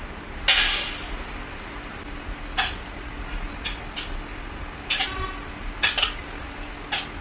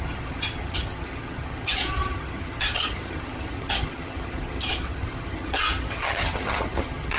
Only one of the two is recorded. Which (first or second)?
first